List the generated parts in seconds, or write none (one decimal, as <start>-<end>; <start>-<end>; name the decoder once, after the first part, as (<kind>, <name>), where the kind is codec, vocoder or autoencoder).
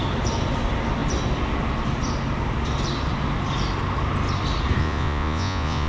4.8-5.9 (vocoder, Vocos)